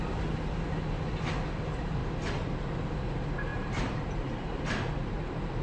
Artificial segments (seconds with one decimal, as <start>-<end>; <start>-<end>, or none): 3.5-4.5